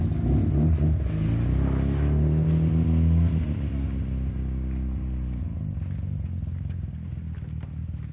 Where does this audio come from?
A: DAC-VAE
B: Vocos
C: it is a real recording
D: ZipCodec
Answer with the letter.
C